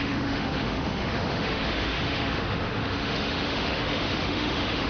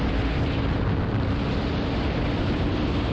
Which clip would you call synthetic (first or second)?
first